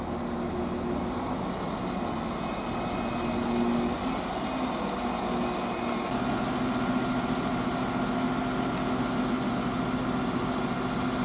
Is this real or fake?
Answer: real